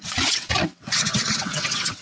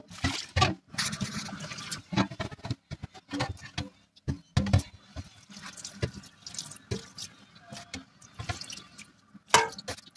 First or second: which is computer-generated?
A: first